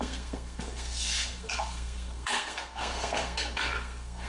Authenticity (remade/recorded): remade